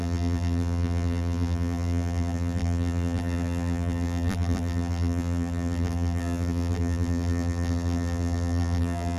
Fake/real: fake